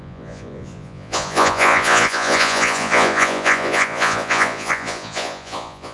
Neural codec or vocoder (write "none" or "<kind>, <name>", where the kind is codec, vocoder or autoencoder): vocoder, Vocos